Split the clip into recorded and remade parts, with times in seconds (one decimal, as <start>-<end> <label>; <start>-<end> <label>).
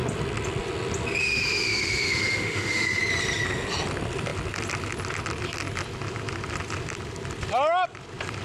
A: 0.0-1.2 recorded; 1.2-3.0 remade; 3.0-8.4 recorded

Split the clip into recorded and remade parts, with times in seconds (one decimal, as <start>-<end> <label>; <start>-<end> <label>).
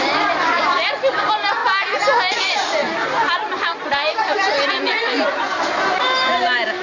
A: 0.0-1.6 remade; 1.6-2.4 recorded; 2.4-6.8 remade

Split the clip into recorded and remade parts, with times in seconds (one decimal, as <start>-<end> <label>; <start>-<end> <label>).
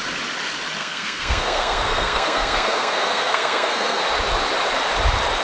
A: 0.0-0.8 recorded; 0.8-4.0 remade; 4.0-5.4 recorded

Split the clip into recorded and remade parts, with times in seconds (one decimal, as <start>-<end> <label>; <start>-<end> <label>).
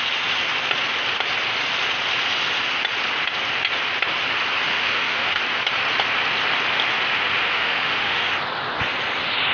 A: 0.0-4.7 recorded; 4.7-5.4 remade; 5.4-7.4 recorded; 7.4-8.3 remade; 8.3-9.5 recorded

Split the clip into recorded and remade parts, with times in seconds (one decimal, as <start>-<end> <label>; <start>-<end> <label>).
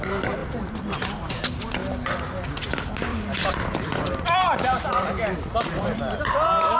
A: 0.0-3.1 recorded; 3.1-6.2 remade; 6.2-6.8 recorded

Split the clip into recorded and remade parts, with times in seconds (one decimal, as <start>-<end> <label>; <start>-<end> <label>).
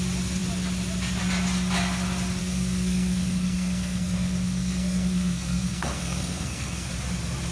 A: 0.0-2.4 recorded; 2.4-6.9 remade; 6.9-7.5 recorded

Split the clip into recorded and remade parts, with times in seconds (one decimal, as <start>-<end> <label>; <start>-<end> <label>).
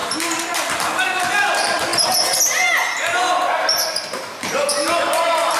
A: 0.0-1.2 recorded; 1.2-1.9 remade; 1.9-5.6 recorded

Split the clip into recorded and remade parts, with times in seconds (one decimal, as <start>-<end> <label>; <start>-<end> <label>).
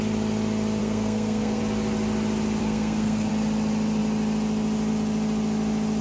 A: 0.0-0.8 recorded; 0.8-1.6 remade; 1.6-2.6 recorded; 2.6-3.3 remade; 3.3-6.0 recorded